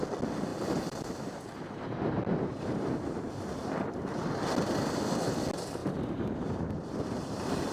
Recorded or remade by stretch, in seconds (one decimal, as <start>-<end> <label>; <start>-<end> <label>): 0.0-0.5 recorded; 0.5-3.3 remade; 3.3-5.8 recorded; 5.8-7.7 remade